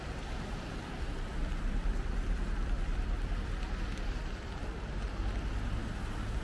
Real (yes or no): yes